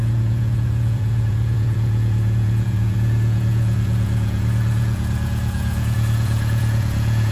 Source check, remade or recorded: remade